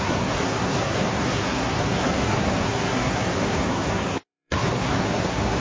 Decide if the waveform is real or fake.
fake